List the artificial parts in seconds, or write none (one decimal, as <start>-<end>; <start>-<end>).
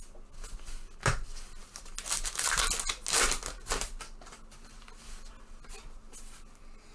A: none